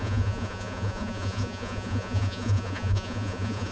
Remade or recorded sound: remade